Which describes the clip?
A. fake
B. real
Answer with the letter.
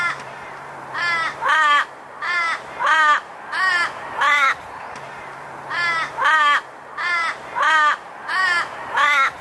A